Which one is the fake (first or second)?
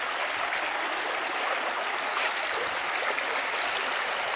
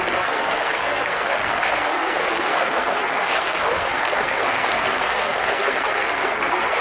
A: second